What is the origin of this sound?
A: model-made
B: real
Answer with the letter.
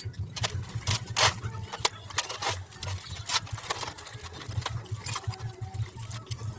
B